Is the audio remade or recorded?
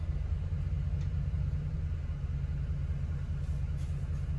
recorded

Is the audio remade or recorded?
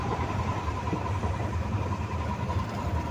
remade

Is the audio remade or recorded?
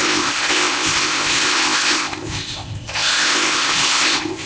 remade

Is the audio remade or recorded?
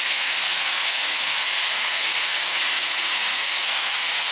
remade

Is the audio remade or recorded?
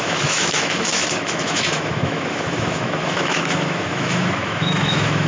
remade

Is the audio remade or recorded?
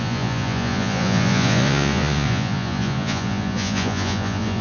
remade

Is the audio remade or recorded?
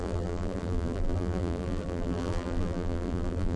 remade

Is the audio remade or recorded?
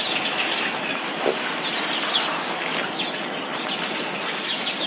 recorded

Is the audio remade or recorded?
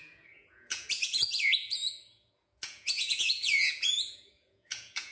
remade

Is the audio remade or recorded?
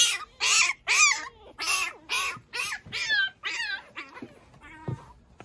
recorded